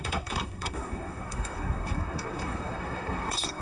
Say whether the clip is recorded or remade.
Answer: remade